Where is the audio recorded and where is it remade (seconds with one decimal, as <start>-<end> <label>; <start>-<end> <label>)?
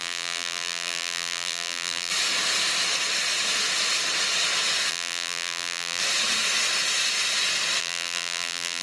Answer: 0.0-2.1 remade; 2.1-4.9 recorded; 4.9-6.0 remade; 6.0-7.8 recorded; 7.8-8.8 remade